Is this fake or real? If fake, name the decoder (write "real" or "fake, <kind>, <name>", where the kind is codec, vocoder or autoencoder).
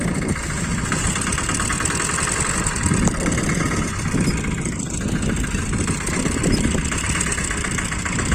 real